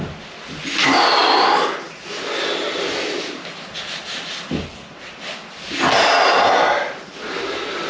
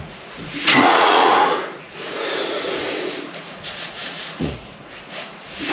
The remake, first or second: second